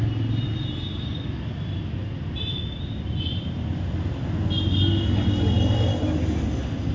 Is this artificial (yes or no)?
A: no